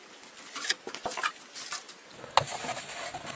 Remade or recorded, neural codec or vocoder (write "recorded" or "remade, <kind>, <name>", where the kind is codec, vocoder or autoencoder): recorded